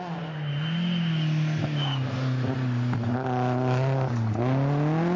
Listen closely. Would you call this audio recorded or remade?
recorded